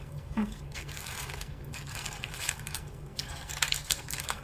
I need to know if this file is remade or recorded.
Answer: remade